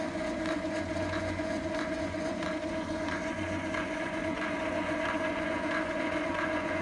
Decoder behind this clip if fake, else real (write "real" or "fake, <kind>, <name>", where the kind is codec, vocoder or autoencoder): fake, vocoder, Vocos